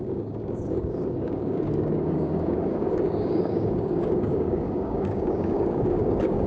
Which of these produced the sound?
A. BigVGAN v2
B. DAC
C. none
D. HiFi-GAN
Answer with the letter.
B